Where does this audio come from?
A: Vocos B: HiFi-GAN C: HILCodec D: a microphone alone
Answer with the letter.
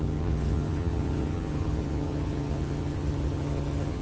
B